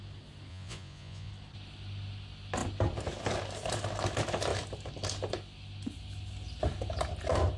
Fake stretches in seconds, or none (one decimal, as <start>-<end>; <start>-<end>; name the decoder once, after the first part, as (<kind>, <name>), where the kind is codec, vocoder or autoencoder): 0.5-1.3 (vocoder, Vocos)